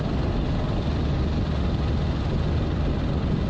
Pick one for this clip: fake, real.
real